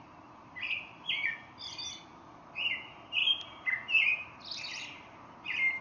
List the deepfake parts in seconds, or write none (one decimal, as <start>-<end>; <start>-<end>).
none